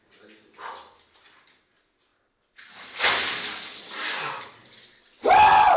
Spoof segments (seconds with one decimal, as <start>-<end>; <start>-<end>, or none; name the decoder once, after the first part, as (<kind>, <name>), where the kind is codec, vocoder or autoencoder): none